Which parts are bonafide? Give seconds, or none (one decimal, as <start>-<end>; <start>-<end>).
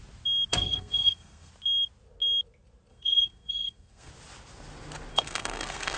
0.0-0.5; 1.5-2.9; 4.1-5.1